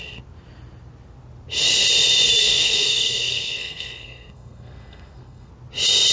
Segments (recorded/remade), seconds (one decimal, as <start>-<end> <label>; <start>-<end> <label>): 0.0-2.4 recorded; 2.4-5.5 remade; 5.5-6.1 recorded